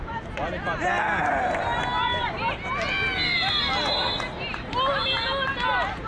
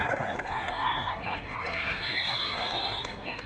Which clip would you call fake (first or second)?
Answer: second